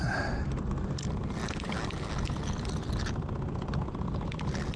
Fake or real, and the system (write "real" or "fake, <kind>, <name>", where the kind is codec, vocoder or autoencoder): real